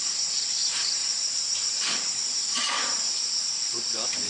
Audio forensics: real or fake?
fake